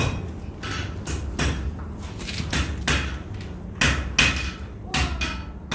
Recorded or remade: recorded